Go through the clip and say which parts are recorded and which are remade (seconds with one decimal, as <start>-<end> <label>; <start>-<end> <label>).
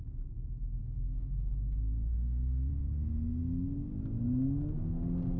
0.0-0.8 recorded; 0.8-2.7 remade; 2.7-5.4 recorded